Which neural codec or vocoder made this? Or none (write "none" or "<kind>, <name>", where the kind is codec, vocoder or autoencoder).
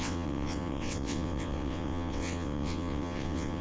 vocoder, WaveNeXt